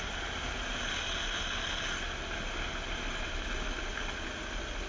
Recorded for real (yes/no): yes